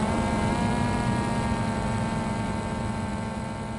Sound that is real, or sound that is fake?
real